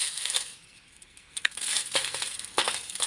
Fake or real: fake